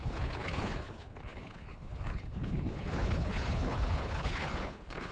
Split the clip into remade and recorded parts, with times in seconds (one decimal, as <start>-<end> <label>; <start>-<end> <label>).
0.0-5.1 remade

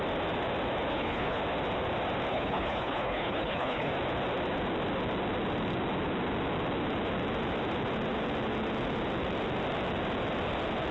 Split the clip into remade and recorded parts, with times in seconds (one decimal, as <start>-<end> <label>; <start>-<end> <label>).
0.0-0.9 recorded; 0.9-1.4 remade; 1.4-2.3 recorded; 2.3-3.9 remade; 3.9-10.9 recorded

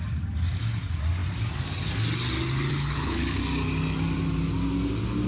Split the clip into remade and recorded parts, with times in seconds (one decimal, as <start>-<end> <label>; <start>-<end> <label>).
0.0-2.7 recorded; 2.7-3.4 remade; 3.4-5.3 recorded

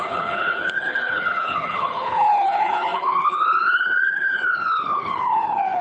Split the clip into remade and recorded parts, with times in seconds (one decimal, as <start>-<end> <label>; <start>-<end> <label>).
0.0-5.8 remade

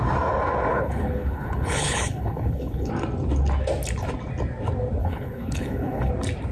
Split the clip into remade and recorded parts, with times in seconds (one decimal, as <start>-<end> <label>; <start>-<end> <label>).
0.0-0.7 recorded; 0.7-2.9 remade; 2.9-5.0 recorded; 5.0-6.1 remade; 6.1-6.5 recorded

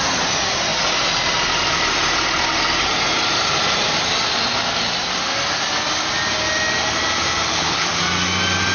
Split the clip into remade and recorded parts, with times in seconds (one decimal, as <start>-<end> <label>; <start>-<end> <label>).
0.0-7.5 recorded; 7.5-8.0 remade; 8.0-8.7 recorded

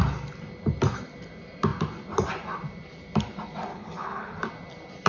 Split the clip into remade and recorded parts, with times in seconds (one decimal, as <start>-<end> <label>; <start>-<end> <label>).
0.0-3.7 recorded; 3.7-4.4 remade; 4.4-5.1 recorded